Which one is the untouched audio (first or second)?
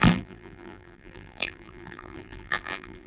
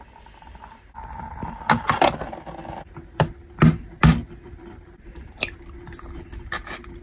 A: second